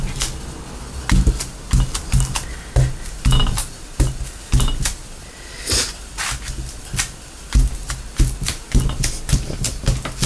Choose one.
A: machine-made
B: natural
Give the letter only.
B